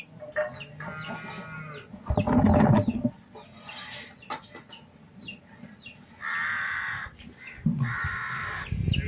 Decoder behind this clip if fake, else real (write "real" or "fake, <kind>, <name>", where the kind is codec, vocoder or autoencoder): real